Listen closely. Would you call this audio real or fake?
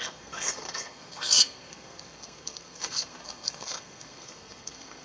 fake